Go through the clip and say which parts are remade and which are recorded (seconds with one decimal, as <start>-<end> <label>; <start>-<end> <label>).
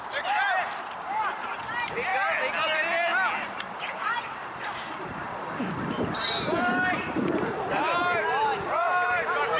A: 0.0-2.1 remade; 2.1-3.5 recorded; 3.5-9.6 remade